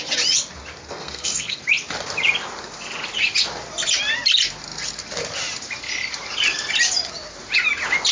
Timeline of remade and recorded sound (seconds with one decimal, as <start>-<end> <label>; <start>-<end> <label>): 0.0-0.9 recorded; 0.9-1.6 remade; 1.6-8.1 recorded